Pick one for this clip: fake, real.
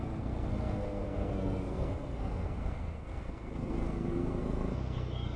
fake